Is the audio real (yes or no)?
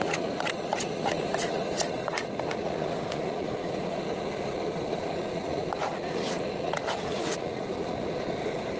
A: no